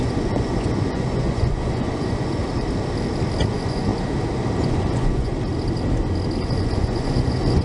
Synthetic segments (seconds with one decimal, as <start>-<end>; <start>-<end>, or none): 0.0-2.4; 3.5-3.9; 4.6-5.3; 6.4-7.6